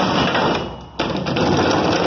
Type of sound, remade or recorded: recorded